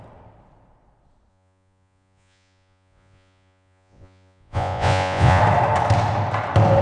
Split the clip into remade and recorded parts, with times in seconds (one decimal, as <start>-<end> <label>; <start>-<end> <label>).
0.0-1.3 recorded; 1.3-5.4 remade; 5.4-6.8 recorded